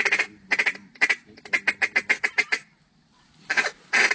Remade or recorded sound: recorded